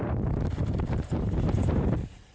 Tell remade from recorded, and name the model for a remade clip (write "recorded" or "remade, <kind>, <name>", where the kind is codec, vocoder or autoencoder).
remade, vocoder, BigVGAN v2